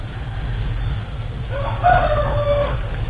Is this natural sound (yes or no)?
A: yes